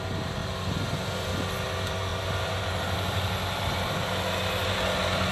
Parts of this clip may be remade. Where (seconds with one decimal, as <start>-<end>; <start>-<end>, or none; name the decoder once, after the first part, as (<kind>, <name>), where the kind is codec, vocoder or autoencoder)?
none